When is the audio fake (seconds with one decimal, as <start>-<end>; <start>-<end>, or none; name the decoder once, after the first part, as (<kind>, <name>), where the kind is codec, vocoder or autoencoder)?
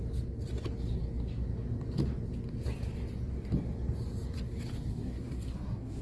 4.9-6.0 (codec, SNAC)